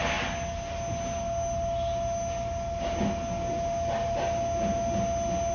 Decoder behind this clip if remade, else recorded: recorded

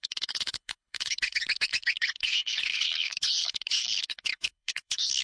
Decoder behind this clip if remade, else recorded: remade, codec, HILCodec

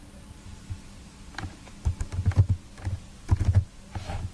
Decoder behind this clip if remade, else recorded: recorded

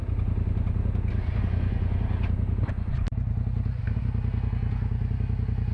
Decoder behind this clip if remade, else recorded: recorded